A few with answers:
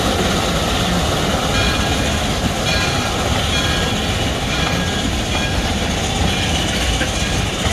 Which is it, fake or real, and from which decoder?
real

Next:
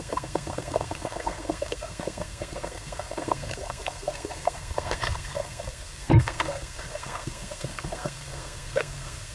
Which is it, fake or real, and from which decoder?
fake, codec, SNAC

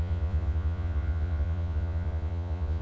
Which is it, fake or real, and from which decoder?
fake, vocoder, Vocos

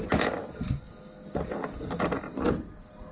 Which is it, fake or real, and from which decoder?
real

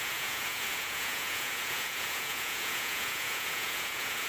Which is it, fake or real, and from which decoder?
fake, vocoder, Vocos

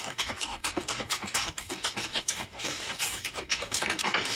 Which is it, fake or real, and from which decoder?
fake, codec, DAC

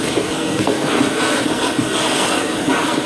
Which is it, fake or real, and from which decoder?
fake, codec, SNAC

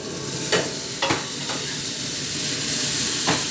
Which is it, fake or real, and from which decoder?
real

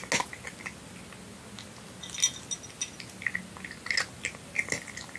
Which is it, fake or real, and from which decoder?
real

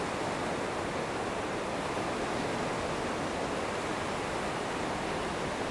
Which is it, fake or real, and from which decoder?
real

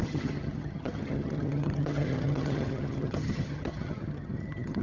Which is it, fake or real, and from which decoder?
fake, vocoder, HiFi-GAN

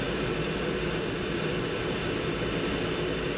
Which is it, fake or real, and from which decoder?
real